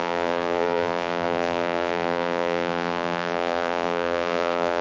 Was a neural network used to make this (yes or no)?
yes